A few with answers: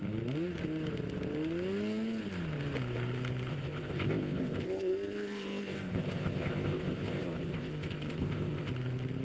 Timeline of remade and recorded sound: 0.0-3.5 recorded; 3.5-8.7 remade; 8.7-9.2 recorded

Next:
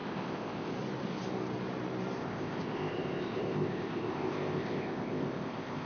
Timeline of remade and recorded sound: 0.0-0.7 remade; 0.7-2.2 recorded; 2.2-5.9 remade

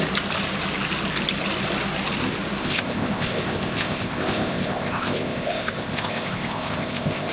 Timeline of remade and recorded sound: 0.0-2.6 recorded; 2.6-7.3 remade

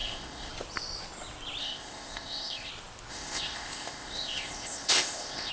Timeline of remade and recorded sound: 0.0-0.5 remade; 0.5-1.6 recorded; 1.6-2.7 remade; 2.7-3.1 recorded; 3.1-5.5 remade

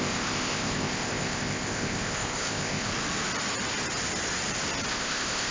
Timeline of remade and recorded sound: 0.0-2.9 remade; 2.9-4.9 recorded; 4.9-5.5 remade

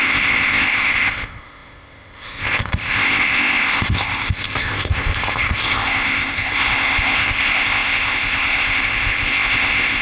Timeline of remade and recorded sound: 0.0-10.0 remade

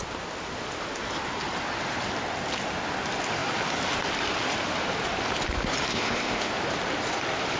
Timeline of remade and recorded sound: 0.0-5.9 recorded; 5.9-6.5 remade; 6.5-7.6 recorded